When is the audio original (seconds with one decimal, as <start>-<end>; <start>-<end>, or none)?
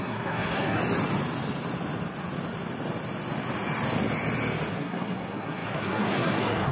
0.8-4.7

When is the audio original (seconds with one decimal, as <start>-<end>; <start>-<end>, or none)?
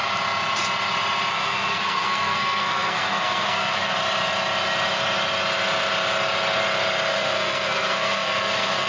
0.0-1.3; 4.0-7.1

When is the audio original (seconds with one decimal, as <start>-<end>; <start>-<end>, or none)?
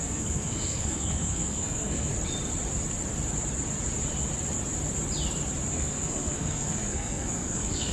2.1-5.7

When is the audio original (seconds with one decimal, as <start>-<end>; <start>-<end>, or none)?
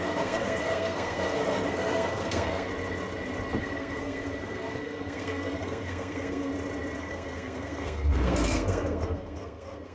2.7-3.6; 6.5-7.0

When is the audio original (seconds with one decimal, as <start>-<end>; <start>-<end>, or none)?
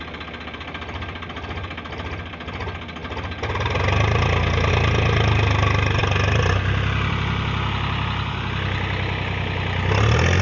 0.0-10.4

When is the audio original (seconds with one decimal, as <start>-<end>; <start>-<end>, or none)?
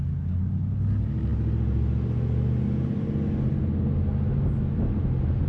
0.0-5.5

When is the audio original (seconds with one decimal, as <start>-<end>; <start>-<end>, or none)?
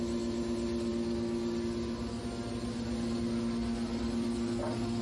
0.0-5.0